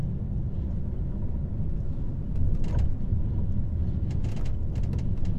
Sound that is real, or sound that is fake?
real